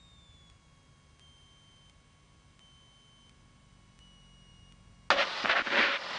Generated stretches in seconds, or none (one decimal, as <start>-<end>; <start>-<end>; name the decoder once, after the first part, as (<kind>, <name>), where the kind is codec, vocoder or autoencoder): none